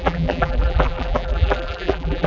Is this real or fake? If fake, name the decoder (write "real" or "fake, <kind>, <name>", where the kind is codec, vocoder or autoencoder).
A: fake, vocoder, BigVGAN v2